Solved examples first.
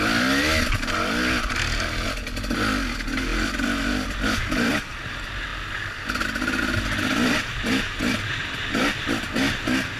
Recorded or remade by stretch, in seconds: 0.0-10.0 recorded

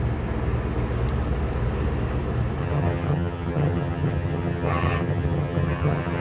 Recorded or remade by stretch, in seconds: 0.0-2.6 recorded; 2.6-6.2 remade

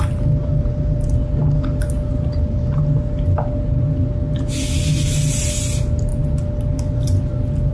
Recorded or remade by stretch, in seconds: 0.0-7.7 recorded